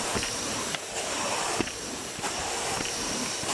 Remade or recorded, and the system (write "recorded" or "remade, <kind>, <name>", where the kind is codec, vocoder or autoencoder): remade, vocoder, BigVGAN v2